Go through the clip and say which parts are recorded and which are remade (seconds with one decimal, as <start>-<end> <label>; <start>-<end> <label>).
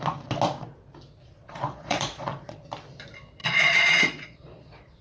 0.0-1.2 recorded; 1.2-2.6 remade; 2.6-3.4 recorded; 3.4-5.0 remade